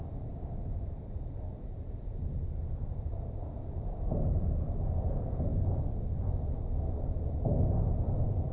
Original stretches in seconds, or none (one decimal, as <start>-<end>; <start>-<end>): 5.5-7.7